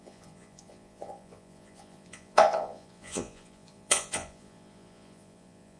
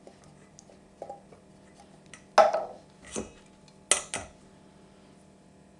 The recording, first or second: second